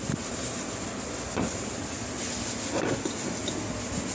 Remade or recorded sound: recorded